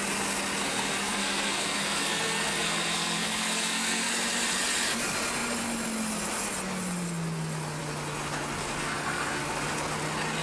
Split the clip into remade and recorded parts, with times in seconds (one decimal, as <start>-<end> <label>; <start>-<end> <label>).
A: 0.0-0.7 recorded; 0.7-4.1 remade; 4.1-8.8 recorded; 8.8-9.4 remade; 9.4-10.4 recorded